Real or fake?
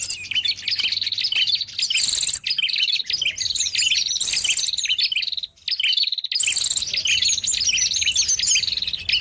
real